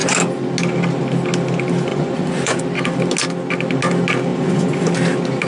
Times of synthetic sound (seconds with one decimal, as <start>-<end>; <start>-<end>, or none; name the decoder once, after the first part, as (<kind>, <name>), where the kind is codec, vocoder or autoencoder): 1.9-2.6 (vocoder, Vocos); 4.3-4.9

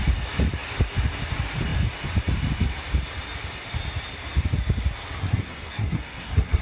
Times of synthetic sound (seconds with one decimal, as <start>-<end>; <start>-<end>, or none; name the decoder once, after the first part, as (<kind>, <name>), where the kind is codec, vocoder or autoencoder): 5.2-6.6 (codec, SNAC)

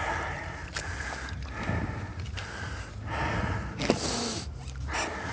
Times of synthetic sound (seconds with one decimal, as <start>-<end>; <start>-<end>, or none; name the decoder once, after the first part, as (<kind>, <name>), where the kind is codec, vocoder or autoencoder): none

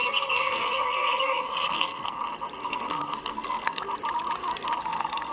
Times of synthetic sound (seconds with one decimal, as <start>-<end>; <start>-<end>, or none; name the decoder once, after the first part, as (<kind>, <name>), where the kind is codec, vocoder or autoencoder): 0.0-2.2 (codec, SNAC); 2.6-3.8; 4.8-5.3